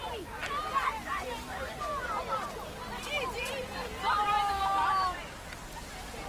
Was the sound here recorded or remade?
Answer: recorded